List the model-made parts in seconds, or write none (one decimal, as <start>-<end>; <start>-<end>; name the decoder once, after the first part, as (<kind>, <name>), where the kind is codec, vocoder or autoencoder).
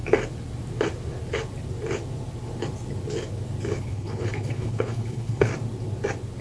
3.8-5.5 (codec, HILCodec)